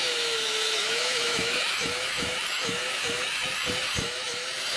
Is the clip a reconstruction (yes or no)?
yes